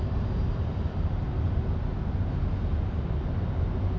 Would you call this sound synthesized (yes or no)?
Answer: no